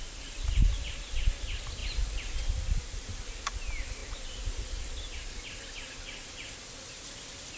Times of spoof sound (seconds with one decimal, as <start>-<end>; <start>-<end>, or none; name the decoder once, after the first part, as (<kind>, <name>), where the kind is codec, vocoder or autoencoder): none